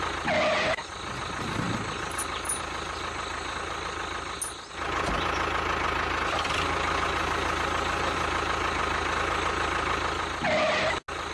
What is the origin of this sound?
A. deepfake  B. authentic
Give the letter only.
B